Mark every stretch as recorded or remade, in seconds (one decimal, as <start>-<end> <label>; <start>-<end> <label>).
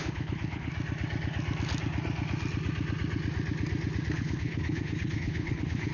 0.0-0.7 remade; 0.7-4.1 recorded; 4.1-5.9 remade